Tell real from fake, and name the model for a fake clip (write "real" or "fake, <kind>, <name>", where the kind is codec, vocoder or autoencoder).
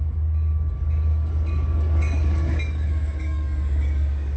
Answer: fake, codec, DAC